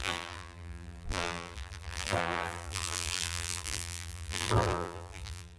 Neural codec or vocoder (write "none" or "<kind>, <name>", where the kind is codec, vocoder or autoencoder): vocoder, BigVGAN v2